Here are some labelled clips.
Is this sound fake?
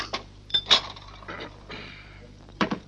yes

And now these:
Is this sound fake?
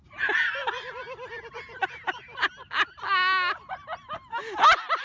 no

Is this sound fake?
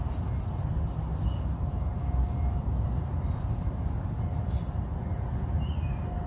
no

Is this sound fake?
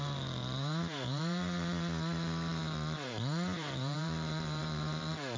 yes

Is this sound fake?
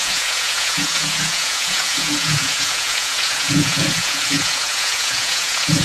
yes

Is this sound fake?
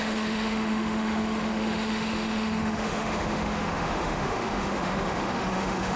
yes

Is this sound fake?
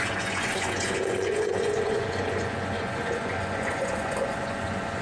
yes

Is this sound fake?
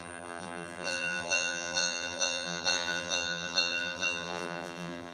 yes